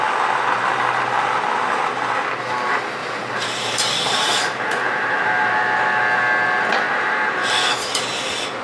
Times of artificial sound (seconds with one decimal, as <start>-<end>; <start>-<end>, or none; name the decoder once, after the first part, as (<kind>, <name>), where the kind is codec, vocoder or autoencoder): 3.0-5.8 (vocoder, BigVGAN v2)